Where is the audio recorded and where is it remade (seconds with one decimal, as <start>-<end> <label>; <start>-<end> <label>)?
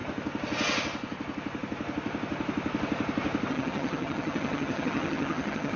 0.0-3.5 recorded; 3.5-5.8 remade